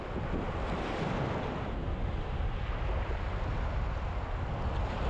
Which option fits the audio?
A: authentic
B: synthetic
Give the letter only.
A